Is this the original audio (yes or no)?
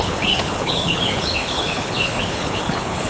no